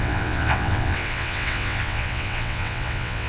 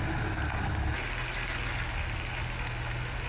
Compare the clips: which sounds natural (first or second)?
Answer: second